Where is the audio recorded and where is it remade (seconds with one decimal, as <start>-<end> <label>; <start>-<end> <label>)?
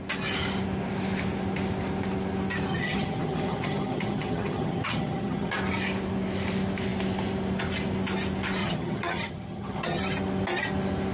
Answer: 0.0-2.7 recorded; 2.7-5.5 remade; 5.5-8.6 recorded; 8.6-10.0 remade; 10.0-11.1 recorded